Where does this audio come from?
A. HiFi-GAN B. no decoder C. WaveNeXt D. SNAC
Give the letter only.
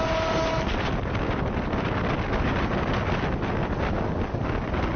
B